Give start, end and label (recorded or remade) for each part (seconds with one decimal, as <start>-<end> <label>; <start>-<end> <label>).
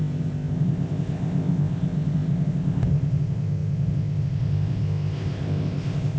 0.0-6.2 remade